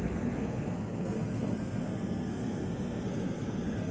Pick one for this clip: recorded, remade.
remade